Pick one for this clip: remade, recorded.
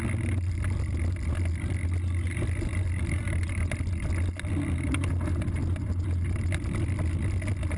recorded